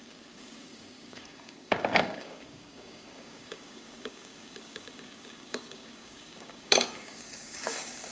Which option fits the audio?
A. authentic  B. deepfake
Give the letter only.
B